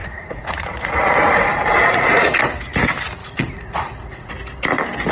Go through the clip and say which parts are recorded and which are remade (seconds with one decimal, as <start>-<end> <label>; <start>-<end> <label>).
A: 0.0-2.4 remade; 2.4-3.2 recorded; 3.2-4.3 remade; 4.3-5.1 recorded